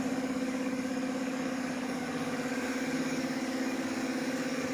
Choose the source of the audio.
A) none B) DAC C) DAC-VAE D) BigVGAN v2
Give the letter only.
B